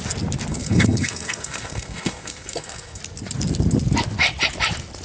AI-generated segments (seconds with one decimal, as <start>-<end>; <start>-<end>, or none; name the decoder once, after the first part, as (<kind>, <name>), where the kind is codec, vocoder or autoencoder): 0.5-3.0 (codec, SNAC)